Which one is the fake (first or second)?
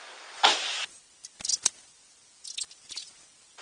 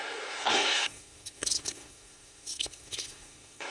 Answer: second